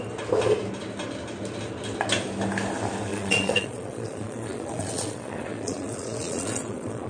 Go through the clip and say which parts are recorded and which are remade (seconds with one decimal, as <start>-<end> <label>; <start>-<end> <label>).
0.0-3.1 recorded; 3.1-7.1 remade

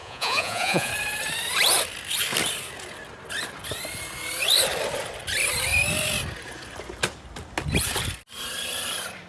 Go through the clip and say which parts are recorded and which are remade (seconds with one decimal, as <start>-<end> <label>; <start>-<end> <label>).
0.0-0.9 remade; 0.9-9.3 recorded

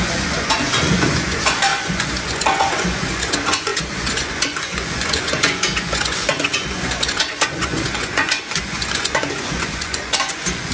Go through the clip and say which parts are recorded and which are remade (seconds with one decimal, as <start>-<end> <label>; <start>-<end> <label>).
0.0-10.7 remade

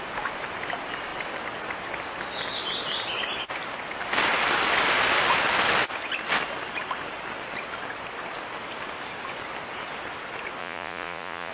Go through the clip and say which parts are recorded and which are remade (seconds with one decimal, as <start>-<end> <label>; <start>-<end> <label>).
0.0-10.6 recorded; 10.6-11.5 remade

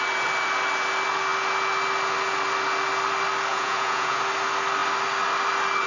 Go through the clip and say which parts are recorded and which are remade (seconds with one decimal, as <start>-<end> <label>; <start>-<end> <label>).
0.0-3.5 recorded; 3.5-4.2 remade; 4.2-5.9 recorded

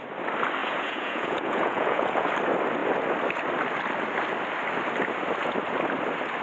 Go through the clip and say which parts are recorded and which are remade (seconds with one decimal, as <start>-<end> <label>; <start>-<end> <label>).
0.0-0.6 recorded; 0.6-2.3 remade; 2.3-6.4 recorded

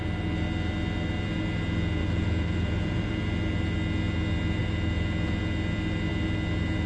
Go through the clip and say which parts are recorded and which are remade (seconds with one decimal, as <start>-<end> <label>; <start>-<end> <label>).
0.0-2.0 recorded; 2.0-3.1 remade; 3.1-6.9 recorded